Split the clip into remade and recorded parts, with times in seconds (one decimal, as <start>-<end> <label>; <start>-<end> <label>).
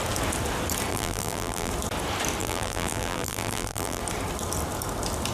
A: 0.0-0.9 recorded; 0.9-1.7 remade; 1.7-2.4 recorded; 2.4-4.0 remade; 4.0-5.3 recorded